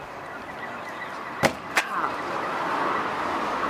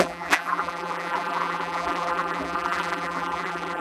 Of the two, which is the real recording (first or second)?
first